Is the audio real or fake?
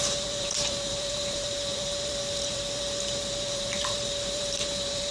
fake